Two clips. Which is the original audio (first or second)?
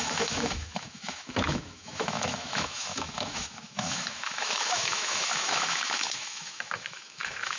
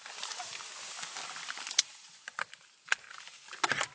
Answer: second